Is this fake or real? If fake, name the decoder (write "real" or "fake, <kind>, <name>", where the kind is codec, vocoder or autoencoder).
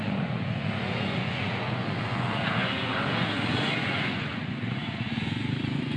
fake, vocoder, Vocos